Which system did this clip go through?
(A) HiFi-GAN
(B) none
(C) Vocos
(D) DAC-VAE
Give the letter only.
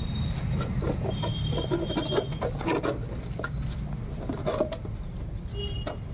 B